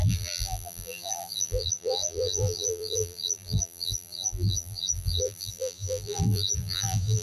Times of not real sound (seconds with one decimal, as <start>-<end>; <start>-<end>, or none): 0.0-7.2